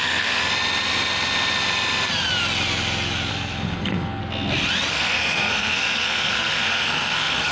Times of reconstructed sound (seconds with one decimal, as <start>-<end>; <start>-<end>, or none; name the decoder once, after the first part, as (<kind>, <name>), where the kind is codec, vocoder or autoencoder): 0.0-0.4 (codec, SNAC); 3.3-4.2; 4.9-7.5